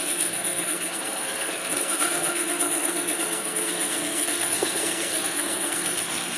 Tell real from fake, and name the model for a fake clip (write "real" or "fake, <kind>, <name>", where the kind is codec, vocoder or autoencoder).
fake, codec, SNAC